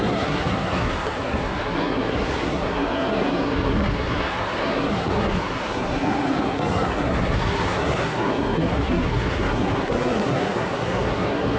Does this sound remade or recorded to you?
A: remade